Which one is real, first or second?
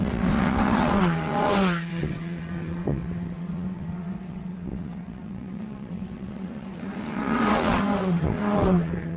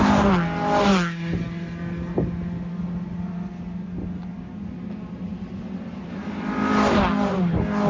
second